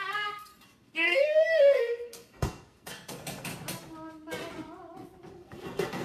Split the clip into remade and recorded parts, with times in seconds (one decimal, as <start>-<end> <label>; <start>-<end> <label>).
0.0-3.5 remade; 3.5-5.3 recorded; 5.3-6.0 remade